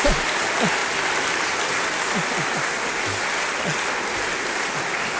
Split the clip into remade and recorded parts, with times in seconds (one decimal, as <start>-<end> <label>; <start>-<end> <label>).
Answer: 0.0-5.2 recorded